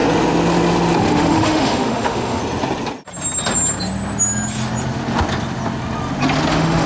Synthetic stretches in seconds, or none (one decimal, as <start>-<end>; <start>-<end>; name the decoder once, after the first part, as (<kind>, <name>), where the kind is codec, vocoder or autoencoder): 1.0-2.4 (autoencoder, DAC-VAE); 6.5-6.9